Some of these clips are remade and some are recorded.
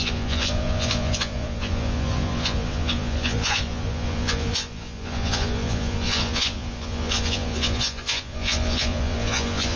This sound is remade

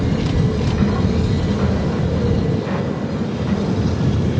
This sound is recorded